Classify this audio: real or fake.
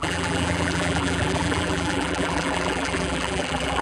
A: fake